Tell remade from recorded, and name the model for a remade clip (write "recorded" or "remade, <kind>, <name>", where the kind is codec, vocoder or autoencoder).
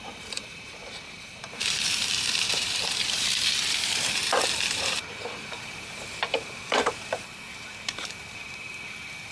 remade, vocoder, BigVGAN v2